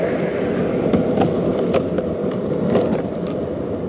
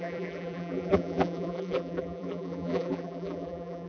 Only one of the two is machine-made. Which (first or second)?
second